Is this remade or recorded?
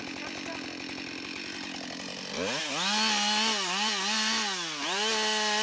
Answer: recorded